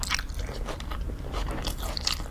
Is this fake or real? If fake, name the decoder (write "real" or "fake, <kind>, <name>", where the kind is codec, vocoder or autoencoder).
real